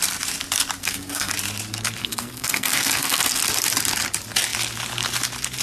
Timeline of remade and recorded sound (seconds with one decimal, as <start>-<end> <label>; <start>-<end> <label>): 0.0-0.8 recorded; 0.8-1.3 remade; 1.3-2.0 recorded; 2.0-3.4 remade; 3.4-5.6 recorded